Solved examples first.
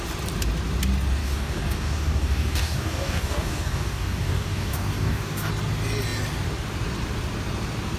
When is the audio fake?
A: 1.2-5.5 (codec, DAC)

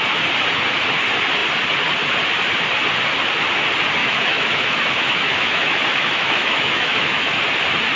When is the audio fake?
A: 4.0-7.4 (autoencoder, DAC-VAE)

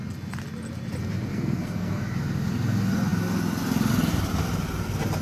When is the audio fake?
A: 1.3-2.0 (codec, SNAC)

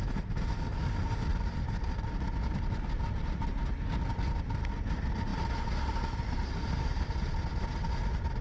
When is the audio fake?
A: 1.3-1.9 (vocoder, BigVGAN v2)

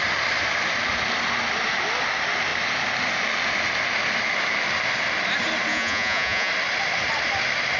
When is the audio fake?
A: 5.7-6.5 (vocoder, Vocos)

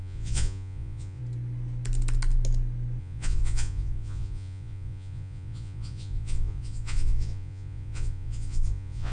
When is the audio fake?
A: 0.0-1.2 (vocoder, Vocos); 3.0-9.1